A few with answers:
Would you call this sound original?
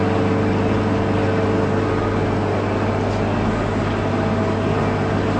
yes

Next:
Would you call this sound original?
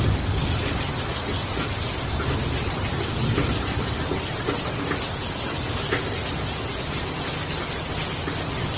yes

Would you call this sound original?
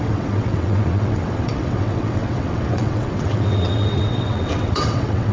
no